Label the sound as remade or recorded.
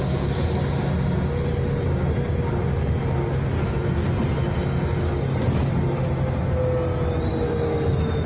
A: recorded